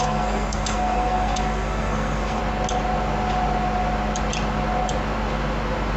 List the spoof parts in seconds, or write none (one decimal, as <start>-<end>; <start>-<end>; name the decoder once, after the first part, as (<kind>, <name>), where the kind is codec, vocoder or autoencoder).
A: 0.0-2.4 (codec, SNAC)